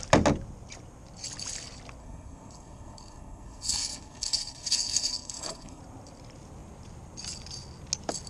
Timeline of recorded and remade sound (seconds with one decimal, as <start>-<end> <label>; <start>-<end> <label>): 0.0-2.0 recorded; 2.0-5.8 remade; 5.8-8.3 recorded